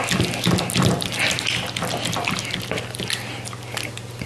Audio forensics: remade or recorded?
recorded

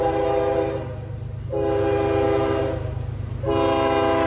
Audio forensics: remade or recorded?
recorded